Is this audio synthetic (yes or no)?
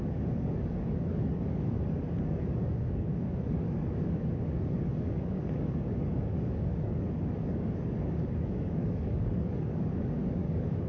yes